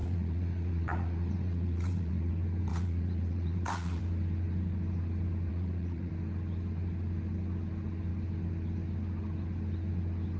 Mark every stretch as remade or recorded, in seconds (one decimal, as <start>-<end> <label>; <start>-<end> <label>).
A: 0.0-2.3 remade; 2.3-2.7 recorded; 2.7-4.0 remade; 4.0-5.5 recorded; 5.5-6.1 remade; 6.1-10.4 recorded